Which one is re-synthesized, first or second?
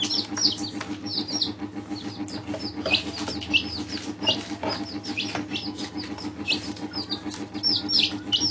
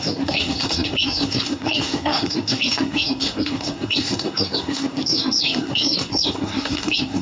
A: second